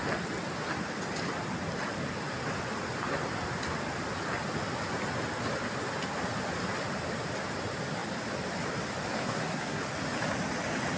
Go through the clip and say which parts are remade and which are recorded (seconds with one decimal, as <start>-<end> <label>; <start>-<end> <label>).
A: 0.0-9.2 recorded; 9.2-9.8 remade; 9.8-11.0 recorded